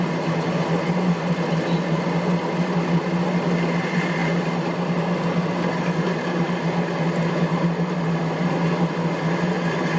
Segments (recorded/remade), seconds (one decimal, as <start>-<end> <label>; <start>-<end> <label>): 0.0-4.2 recorded; 4.2-5.0 remade; 5.0-10.0 recorded

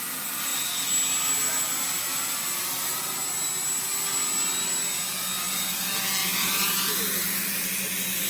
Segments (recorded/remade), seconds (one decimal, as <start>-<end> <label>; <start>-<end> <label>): 0.0-6.2 recorded; 6.2-7.6 remade; 7.6-8.3 recorded

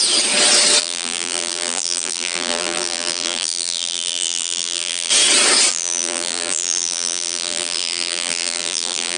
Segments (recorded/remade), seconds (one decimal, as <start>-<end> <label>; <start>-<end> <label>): 0.0-0.8 recorded; 0.8-5.1 remade; 5.1-5.7 recorded; 5.7-9.2 remade

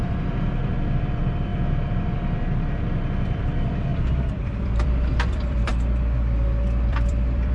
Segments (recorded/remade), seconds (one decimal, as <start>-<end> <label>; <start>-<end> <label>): 0.0-5.7 remade; 5.7-6.9 recorded; 6.9-7.5 remade

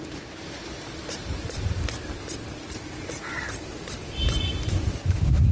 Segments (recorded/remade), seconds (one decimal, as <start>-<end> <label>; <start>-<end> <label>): 0.0-0.6 recorded; 0.6-3.9 remade; 3.9-5.5 recorded

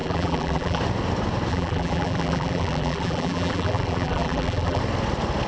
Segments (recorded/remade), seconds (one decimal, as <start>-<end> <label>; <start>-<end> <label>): 0.0-0.8 remade; 0.8-1.5 recorded; 1.5-4.8 remade; 4.8-5.5 recorded

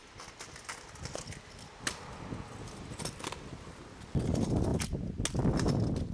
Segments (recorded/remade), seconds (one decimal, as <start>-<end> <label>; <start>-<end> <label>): 0.0-6.1 recorded

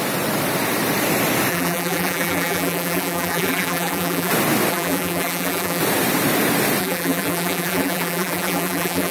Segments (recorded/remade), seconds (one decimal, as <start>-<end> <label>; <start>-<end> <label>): 0.0-1.5 recorded; 1.5-4.3 remade; 4.3-4.7 recorded; 4.7-5.8 remade; 5.8-6.8 recorded; 6.8-9.1 remade